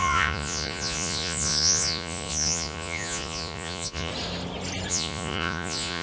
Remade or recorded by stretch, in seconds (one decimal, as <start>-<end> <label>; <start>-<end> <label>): 0.0-4.1 remade; 4.1-4.9 recorded; 4.9-6.0 remade